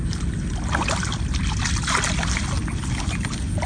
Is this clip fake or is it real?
real